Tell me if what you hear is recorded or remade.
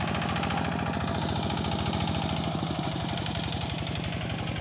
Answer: recorded